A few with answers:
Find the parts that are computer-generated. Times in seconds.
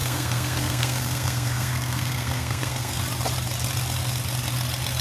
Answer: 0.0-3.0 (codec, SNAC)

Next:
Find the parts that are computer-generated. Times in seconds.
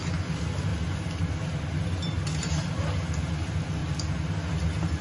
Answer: none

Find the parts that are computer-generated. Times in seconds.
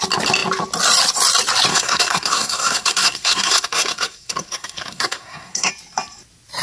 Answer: 1.7-5.7 (codec, SNAC)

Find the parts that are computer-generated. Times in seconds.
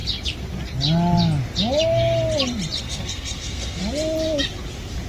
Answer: 2.8-3.8 (codec, SNAC)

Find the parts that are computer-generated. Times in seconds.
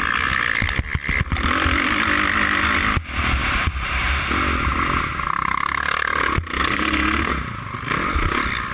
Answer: 6.6-7.3 (codec, SNAC)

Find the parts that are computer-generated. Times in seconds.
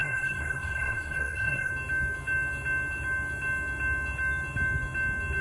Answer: 0.0-1.7 (codec, SNAC)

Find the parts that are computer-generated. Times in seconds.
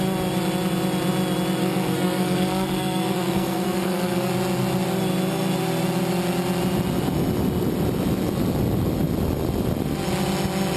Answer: 1.6-4.3 (codec, SNAC)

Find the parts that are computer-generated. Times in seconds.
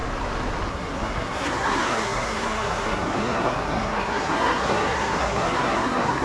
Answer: 0.7-6.2 (codec, SNAC)